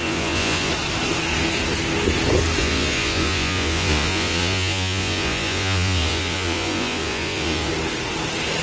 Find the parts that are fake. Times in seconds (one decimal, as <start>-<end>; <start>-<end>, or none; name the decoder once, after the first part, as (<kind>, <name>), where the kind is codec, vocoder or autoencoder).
0.0-0.7 (vocoder, Vocos); 2.6-7.7